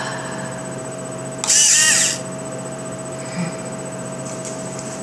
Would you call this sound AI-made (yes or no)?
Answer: no